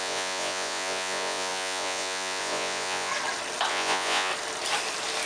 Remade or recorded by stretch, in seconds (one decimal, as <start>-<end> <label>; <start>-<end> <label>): 0.0-3.1 remade; 3.1-3.7 recorded; 3.7-4.3 remade; 4.3-5.3 recorded